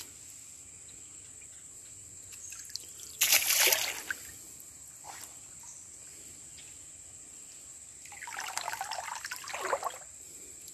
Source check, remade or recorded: recorded